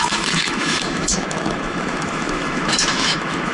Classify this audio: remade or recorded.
remade